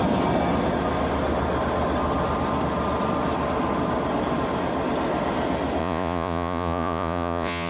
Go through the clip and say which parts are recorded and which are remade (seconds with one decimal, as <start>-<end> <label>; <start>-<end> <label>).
0.0-5.8 recorded; 5.8-7.7 remade

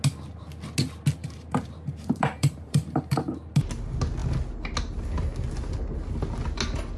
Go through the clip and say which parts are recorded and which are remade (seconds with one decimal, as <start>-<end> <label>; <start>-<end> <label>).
0.0-1.2 recorded; 1.2-3.3 remade; 3.3-7.0 recorded

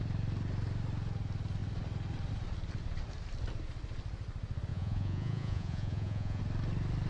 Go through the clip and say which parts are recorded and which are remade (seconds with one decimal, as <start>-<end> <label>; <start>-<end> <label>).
0.0-4.7 recorded; 4.7-6.4 remade; 6.4-7.1 recorded